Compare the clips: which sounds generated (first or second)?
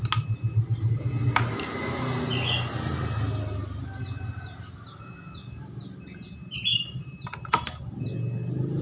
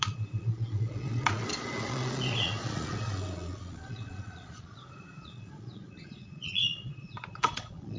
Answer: second